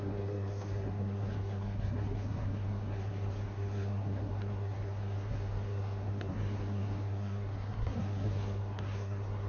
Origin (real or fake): fake